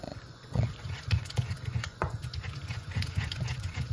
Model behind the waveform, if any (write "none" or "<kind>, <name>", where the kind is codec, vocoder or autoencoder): vocoder, Vocos